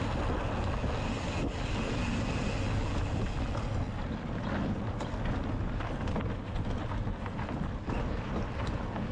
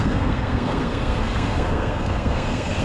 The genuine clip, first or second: first